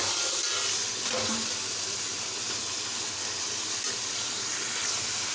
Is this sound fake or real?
real